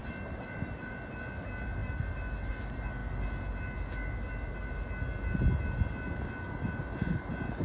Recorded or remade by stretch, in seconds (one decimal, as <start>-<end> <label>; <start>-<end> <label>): 0.0-0.9 remade; 0.9-7.6 recorded